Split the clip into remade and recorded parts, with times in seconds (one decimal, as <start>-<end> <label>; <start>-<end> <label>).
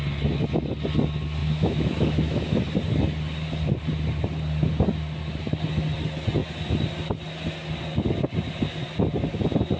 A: 0.0-1.4 recorded; 1.4-2.6 remade; 2.6-9.8 recorded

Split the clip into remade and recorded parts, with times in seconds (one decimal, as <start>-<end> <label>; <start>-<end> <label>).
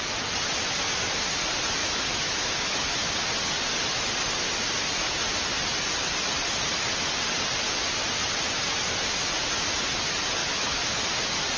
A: 0.0-1.8 recorded; 1.8-3.1 remade; 3.1-10.4 recorded; 10.4-11.0 remade; 11.0-11.6 recorded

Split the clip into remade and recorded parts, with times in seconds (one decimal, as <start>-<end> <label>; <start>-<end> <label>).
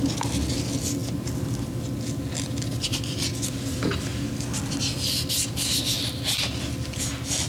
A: 0.0-7.5 recorded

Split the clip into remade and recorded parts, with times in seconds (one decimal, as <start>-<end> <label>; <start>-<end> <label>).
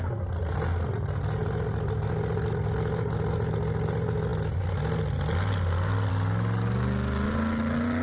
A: 0.0-8.0 recorded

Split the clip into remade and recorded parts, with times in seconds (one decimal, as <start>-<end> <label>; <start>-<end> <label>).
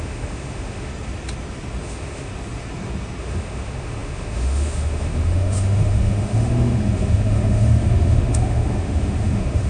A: 0.0-0.9 remade; 0.9-1.8 recorded; 1.8-2.3 remade; 2.3-3.2 recorded; 3.2-9.7 remade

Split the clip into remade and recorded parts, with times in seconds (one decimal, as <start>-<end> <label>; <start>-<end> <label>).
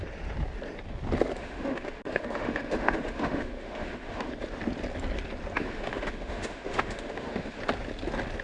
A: 0.0-1.4 recorded; 1.4-4.3 remade; 4.3-5.6 recorded; 5.6-7.6 remade; 7.6-8.4 recorded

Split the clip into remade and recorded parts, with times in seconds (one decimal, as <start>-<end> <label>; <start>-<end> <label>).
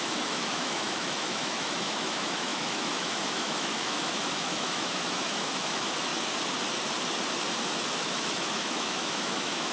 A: 0.0-6.1 remade; 6.1-7.9 recorded; 7.9-9.7 remade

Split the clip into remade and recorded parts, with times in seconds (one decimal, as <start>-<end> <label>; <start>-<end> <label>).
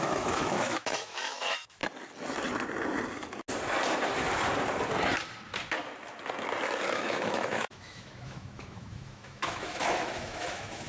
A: 0.0-1.8 remade; 1.8-6.9 recorded; 6.9-10.9 remade